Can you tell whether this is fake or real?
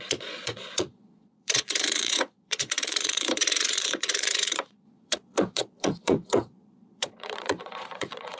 fake